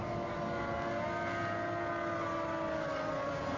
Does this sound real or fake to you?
real